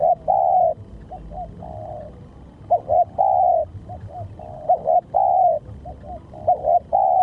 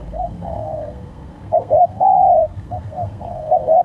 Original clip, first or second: first